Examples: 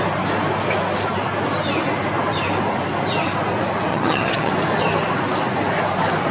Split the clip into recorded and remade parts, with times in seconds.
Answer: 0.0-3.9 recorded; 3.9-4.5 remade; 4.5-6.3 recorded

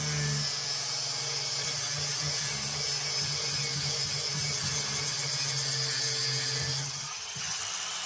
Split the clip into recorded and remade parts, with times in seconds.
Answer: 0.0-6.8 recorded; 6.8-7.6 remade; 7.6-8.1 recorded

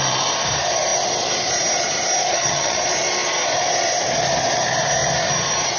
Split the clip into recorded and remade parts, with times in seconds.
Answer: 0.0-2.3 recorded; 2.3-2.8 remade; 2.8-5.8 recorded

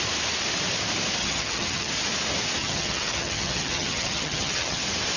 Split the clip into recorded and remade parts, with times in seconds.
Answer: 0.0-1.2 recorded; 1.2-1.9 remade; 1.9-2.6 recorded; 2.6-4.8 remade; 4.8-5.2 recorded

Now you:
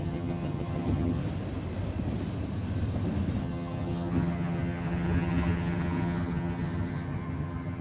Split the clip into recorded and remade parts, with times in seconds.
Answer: 0.0-1.2 remade; 1.2-3.4 recorded; 3.4-7.8 remade